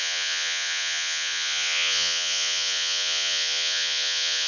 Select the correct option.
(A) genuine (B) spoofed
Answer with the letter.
B